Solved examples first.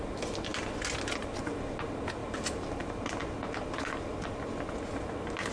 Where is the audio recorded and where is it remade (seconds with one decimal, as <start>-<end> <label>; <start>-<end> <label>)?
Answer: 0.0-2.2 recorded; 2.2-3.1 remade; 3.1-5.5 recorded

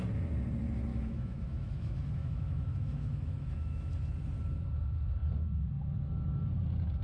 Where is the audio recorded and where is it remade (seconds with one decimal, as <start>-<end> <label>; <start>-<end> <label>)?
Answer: 0.0-0.9 recorded; 0.9-3.9 remade; 3.9-7.0 recorded

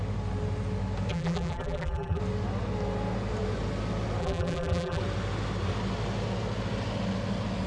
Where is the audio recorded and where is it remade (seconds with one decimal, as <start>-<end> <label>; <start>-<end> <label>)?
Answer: 0.0-1.1 recorded; 1.1-2.2 remade; 2.2-4.2 recorded; 4.2-5.0 remade; 5.0-7.7 recorded

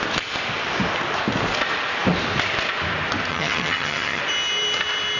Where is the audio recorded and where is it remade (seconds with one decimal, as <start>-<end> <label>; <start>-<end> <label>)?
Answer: 0.0-3.3 recorded; 3.3-4.2 remade; 4.2-5.2 recorded

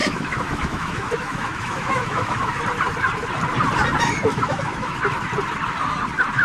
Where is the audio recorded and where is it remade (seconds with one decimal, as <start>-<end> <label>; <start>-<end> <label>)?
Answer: 0.0-2.6 remade; 2.6-4.3 recorded; 4.3-5.0 remade; 5.0-6.4 recorded

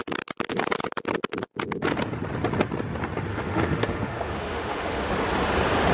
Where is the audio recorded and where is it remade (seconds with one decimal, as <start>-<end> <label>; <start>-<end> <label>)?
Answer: 0.0-3.3 recorded; 3.3-5.1 remade; 5.1-5.9 recorded